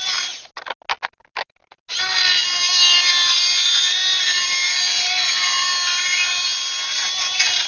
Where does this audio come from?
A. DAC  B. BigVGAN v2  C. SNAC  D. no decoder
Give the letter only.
D